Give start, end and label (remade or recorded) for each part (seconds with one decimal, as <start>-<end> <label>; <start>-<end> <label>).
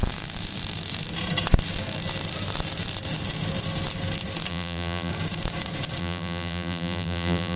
0.0-4.5 recorded; 4.5-5.1 remade; 5.1-6.0 recorded; 6.0-7.6 remade